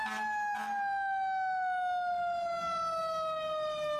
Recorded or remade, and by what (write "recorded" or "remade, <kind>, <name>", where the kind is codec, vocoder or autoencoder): recorded